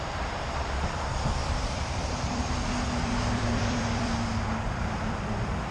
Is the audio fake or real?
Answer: fake